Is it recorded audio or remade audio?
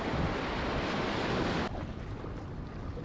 recorded